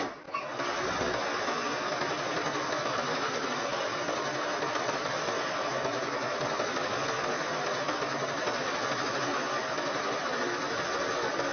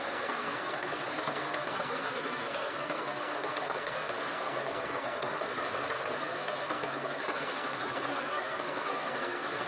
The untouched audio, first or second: first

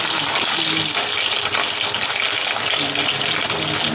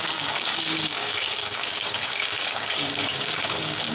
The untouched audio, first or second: first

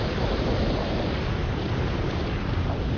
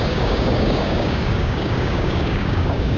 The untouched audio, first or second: first